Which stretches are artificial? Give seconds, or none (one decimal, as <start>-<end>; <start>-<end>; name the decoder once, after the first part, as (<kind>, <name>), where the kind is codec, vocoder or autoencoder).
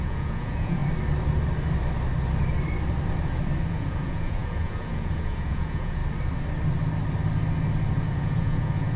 0.0-0.8 (vocoder, Vocos); 3.7-6.0; 8.2-9.0